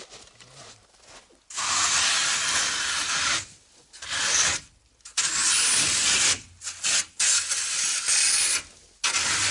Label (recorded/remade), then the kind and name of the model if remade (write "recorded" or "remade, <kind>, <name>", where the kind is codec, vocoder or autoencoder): recorded